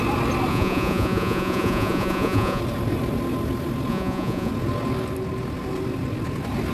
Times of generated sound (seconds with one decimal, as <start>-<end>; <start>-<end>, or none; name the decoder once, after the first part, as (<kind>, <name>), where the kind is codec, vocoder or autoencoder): 0.5-2.6 (vocoder, Vocos); 3.9-4.5